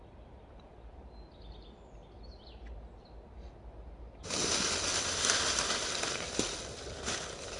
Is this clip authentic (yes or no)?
yes